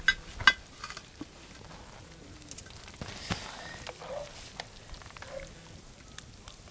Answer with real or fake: real